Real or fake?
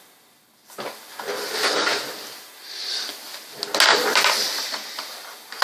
real